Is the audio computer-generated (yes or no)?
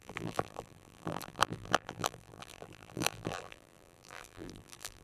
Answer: yes